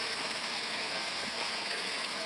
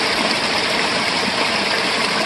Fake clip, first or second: first